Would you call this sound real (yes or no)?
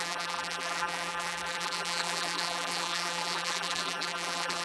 no